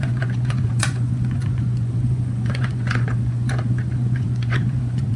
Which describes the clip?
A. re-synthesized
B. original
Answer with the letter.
A